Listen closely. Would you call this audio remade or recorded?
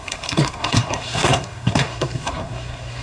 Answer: remade